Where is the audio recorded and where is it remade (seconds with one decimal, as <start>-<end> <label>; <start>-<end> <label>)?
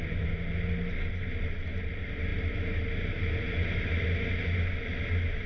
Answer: 0.0-5.5 recorded